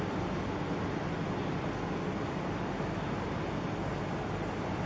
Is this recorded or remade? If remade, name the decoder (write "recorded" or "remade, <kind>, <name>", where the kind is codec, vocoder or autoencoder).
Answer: recorded